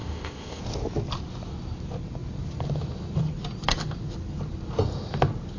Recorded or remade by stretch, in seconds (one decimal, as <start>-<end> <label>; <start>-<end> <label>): 0.0-0.6 remade; 0.6-5.6 recorded